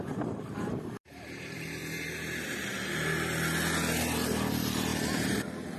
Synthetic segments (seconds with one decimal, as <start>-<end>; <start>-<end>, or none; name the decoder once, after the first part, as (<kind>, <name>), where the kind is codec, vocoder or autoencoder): 0.0-1.8 (vocoder, BigVGAN v2); 4.5-5.8